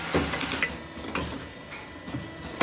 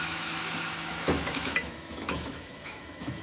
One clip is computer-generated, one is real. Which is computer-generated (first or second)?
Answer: second